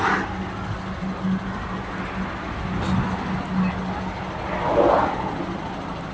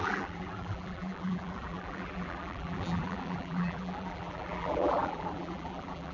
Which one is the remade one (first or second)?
second